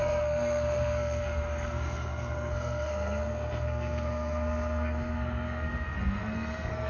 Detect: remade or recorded remade